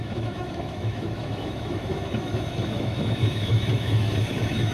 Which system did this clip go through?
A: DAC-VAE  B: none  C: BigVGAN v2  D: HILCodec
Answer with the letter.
A